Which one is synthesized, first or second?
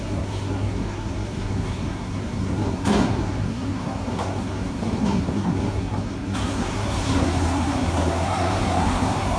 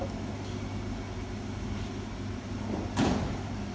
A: first